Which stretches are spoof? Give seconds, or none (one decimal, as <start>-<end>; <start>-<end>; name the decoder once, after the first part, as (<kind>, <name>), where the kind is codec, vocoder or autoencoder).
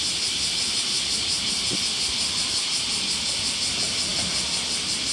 none